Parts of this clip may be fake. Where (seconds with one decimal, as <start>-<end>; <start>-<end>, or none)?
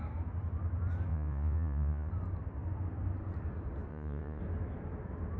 1.1-2.1; 3.9-4.4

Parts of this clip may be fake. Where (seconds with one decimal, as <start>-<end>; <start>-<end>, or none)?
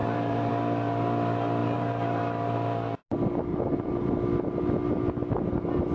0.0-0.5; 1.6-2.2; 3.5-4.1